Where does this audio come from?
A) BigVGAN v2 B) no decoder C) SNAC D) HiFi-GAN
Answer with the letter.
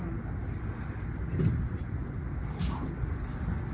B